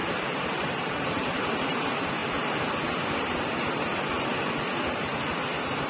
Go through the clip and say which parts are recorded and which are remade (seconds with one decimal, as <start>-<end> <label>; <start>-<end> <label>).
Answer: 0.0-1.8 remade; 1.8-5.9 recorded